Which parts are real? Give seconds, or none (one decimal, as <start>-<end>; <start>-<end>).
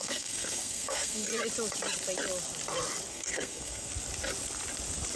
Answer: 1.3-3.1; 3.9-5.2